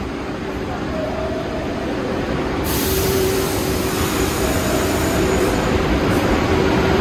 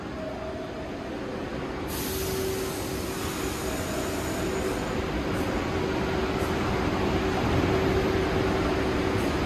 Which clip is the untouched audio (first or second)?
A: second